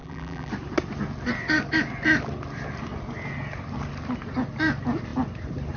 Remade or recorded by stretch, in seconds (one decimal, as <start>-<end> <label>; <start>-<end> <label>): 0.0-0.5 remade; 0.5-5.8 recorded